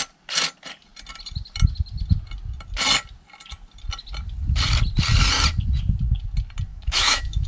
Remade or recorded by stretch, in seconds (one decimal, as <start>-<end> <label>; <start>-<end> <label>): 0.0-6.7 recorded; 6.7-7.5 remade